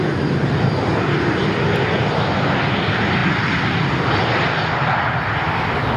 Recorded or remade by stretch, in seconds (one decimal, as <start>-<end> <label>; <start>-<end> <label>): 0.0-3.2 recorded; 3.2-5.0 remade; 5.0-6.0 recorded